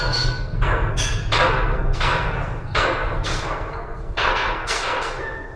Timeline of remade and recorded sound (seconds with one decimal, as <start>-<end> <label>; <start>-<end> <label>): 0.0-5.6 remade